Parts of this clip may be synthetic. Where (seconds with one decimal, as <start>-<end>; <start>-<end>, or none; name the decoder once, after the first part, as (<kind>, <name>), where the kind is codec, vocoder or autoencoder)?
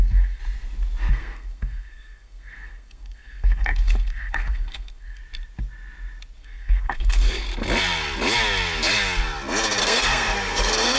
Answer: 0.0-0.4 (codec, SNAC); 1.1-5.2; 6.4-7.5; 9.8-11.0